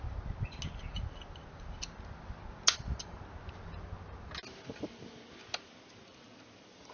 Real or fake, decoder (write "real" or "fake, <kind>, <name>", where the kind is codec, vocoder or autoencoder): real